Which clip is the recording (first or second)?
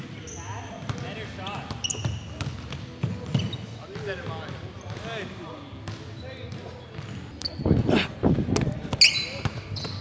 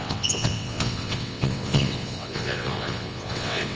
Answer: first